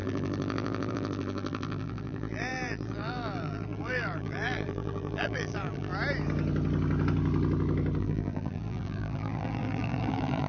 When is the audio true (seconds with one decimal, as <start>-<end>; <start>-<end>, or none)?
5.9-8.0